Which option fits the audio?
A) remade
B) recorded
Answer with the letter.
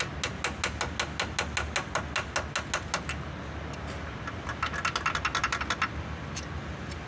B